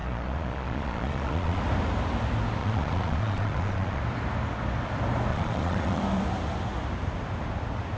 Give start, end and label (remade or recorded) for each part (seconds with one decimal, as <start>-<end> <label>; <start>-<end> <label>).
0.0-1.6 remade; 1.6-2.6 recorded; 2.6-4.0 remade; 4.0-5.3 recorded; 5.3-6.0 remade; 6.0-8.0 recorded